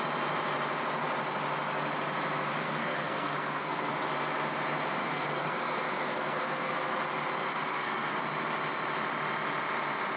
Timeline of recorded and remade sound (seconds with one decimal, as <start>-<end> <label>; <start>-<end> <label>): 0.0-2.6 recorded; 2.6-3.9 remade; 3.9-5.0 recorded; 5.0-6.7 remade; 6.7-7.4 recorded; 7.4-8.2 remade; 8.2-10.2 recorded